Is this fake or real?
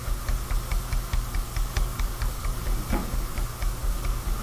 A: fake